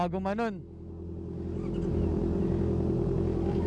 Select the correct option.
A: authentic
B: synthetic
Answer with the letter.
A